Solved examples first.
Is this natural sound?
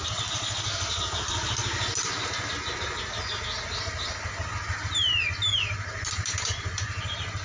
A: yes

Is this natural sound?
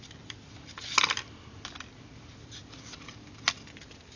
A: yes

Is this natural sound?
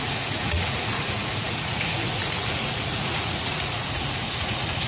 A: no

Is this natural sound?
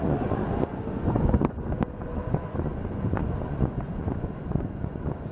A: no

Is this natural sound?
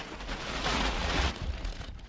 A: no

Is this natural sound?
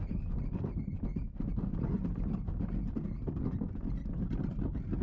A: yes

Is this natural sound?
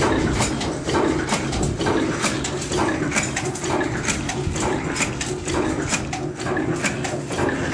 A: yes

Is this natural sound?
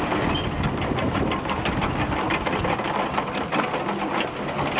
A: yes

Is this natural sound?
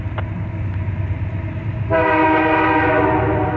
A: yes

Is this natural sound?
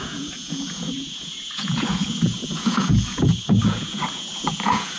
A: no